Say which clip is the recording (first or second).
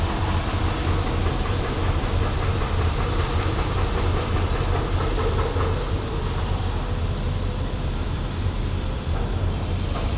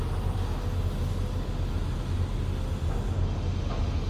second